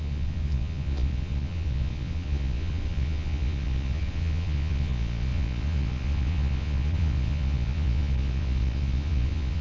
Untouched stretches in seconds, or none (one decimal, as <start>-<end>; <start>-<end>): none